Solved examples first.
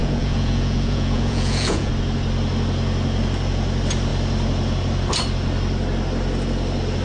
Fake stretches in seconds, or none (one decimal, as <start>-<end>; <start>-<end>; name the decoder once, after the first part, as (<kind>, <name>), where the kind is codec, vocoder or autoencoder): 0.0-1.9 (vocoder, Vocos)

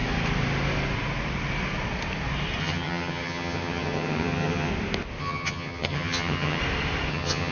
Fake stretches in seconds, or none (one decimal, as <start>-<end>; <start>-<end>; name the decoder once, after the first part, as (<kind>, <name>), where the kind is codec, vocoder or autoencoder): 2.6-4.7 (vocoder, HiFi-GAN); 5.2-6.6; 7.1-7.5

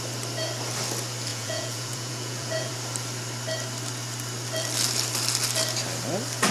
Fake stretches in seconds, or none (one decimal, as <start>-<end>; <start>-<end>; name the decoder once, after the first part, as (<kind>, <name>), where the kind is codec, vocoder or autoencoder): 1.3-2.7 (vocoder, Vocos)